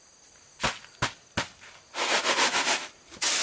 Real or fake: real